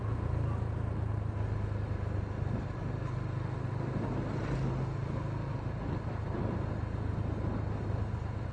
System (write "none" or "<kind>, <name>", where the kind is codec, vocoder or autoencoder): none